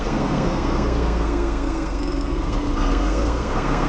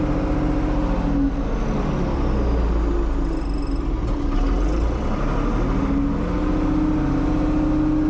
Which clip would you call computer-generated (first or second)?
first